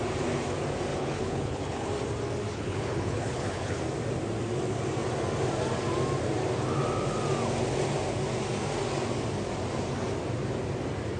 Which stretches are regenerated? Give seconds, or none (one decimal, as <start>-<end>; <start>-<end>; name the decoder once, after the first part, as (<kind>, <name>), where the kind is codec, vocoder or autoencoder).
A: 0.9-1.9 (codec, HILCodec); 2.5-3.8